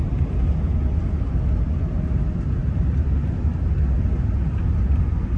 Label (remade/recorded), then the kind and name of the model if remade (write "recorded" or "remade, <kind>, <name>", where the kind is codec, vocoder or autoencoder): recorded